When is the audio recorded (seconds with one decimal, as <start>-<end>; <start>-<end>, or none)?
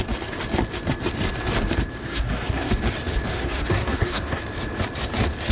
0.0-2.0; 2.7-3.3; 4.4-5.5